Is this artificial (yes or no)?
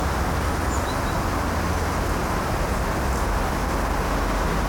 no